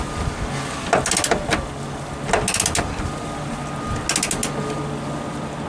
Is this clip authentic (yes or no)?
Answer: yes